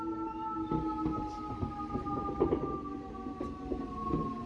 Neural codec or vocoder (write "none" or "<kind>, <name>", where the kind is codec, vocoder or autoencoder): none